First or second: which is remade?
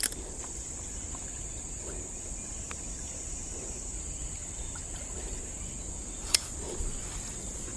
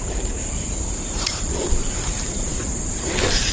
second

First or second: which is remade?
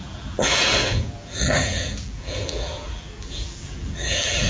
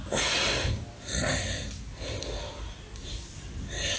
first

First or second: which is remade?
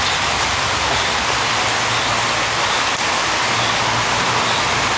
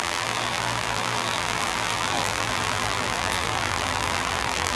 second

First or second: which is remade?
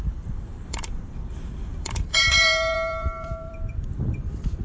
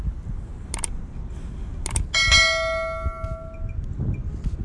first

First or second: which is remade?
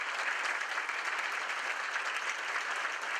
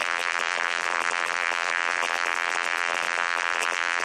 second